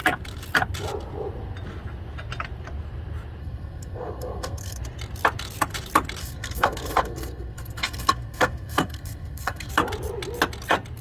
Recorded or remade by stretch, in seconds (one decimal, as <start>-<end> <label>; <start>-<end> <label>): 0.0-3.4 recorded; 3.4-4.8 remade; 4.8-6.2 recorded; 6.2-9.7 remade; 9.7-11.0 recorded